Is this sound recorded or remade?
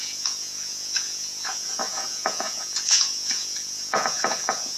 remade